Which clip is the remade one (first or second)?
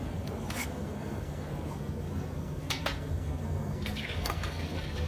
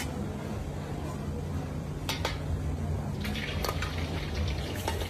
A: first